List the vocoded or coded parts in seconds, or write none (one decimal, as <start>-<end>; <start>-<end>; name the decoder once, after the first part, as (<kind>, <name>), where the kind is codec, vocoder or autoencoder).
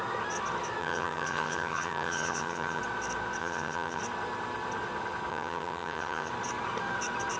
0.8-2.8 (vocoder, HiFi-GAN); 3.4-4.0; 5.3-6.3